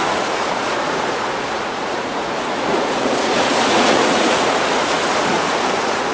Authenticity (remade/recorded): remade